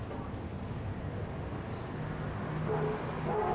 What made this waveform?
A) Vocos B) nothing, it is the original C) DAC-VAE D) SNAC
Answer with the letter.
B